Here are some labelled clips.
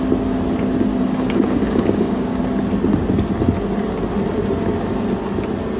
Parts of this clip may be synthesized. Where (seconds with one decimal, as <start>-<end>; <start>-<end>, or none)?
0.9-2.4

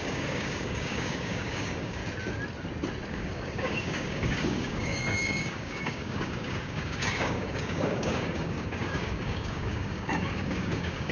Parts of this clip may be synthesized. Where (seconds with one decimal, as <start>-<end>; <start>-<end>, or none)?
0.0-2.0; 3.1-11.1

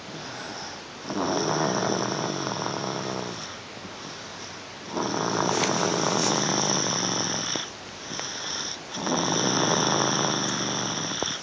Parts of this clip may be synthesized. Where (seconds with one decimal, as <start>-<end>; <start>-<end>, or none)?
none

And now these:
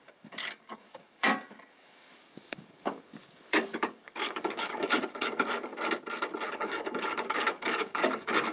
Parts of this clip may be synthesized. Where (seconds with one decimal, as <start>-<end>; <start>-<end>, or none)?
0.0-5.7; 6.5-8.5

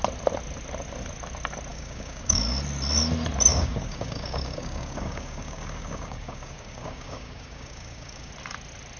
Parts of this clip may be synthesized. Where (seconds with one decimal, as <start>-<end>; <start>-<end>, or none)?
1.7-2.4; 3.5-8.3

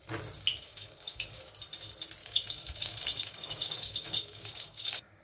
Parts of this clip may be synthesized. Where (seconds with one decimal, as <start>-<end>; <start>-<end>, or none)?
0.5-1.4; 2.2-5.2